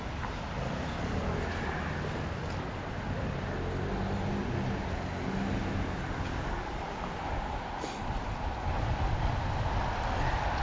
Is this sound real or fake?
real